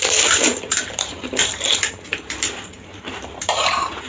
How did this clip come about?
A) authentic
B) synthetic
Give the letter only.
B